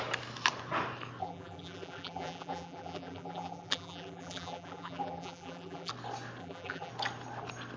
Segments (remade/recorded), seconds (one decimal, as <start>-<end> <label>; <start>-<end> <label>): 0.0-1.2 recorded; 1.2-5.9 remade; 5.9-6.4 recorded; 6.4-6.9 remade; 6.9-7.8 recorded